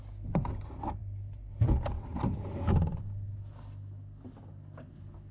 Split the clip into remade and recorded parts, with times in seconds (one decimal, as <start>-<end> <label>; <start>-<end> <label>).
0.0-5.3 recorded